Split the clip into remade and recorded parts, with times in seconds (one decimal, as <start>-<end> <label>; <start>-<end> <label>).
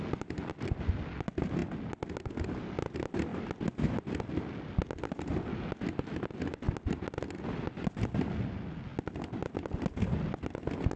0.0-11.0 recorded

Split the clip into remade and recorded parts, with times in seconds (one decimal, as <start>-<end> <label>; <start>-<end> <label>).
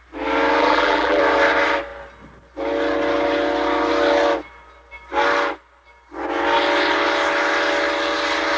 0.0-0.6 recorded; 0.6-1.2 remade; 1.2-8.6 recorded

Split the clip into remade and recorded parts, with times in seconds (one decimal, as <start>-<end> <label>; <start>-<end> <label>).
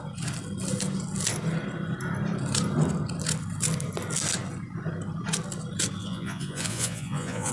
0.0-6.0 recorded; 6.0-7.5 remade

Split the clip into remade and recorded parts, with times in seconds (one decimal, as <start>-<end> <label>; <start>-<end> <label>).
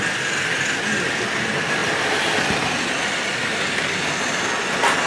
0.0-5.1 recorded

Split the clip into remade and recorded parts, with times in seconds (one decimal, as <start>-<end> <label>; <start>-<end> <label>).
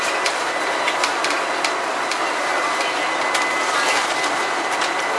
0.0-5.2 recorded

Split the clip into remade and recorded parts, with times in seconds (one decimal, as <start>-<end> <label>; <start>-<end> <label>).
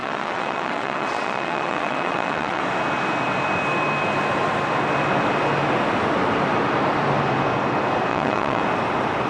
0.0-2.6 remade; 2.6-8.1 recorded; 8.1-8.6 remade; 8.6-9.3 recorded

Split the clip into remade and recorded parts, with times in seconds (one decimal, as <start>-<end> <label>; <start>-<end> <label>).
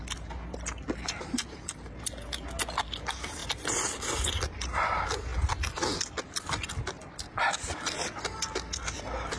0.0-9.4 recorded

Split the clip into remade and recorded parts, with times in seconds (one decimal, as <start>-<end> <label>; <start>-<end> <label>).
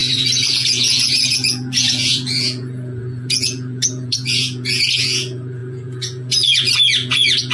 0.0-7.5 remade